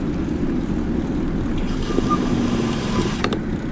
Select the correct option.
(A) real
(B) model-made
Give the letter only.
A